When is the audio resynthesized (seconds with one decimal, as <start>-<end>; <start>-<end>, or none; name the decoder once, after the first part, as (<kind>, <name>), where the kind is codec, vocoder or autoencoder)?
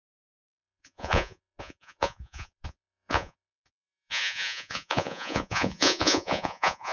0.0-6.9 (vocoder, Vocos)